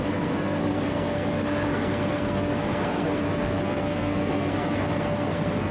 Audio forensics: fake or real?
fake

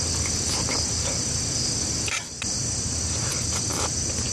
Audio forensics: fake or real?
real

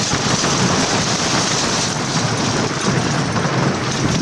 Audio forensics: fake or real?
real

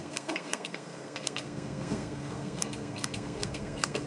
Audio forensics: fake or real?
fake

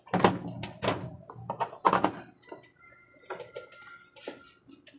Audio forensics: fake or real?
real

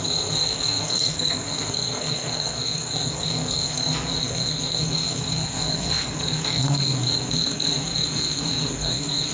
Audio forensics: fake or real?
fake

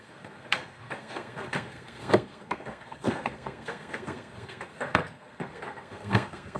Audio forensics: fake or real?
fake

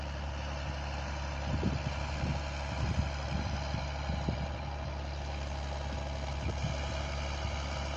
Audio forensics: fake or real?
real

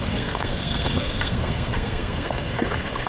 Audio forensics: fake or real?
fake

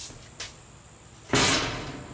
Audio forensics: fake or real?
real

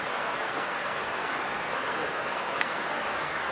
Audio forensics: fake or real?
fake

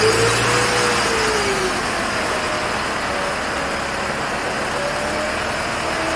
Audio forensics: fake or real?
real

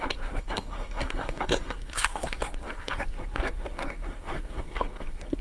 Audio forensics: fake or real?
fake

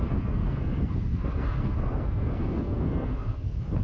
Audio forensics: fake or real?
fake